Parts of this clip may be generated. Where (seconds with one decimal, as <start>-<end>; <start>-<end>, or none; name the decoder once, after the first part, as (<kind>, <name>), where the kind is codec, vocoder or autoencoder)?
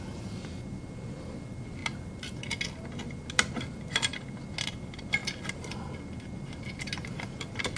none